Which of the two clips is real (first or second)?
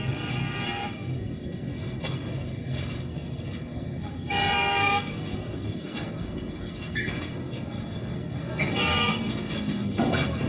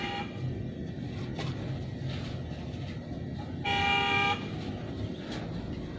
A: second